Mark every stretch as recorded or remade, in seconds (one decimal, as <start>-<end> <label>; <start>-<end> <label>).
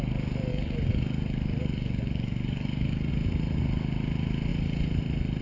0.0-0.5 recorded; 0.5-3.1 remade; 3.1-5.4 recorded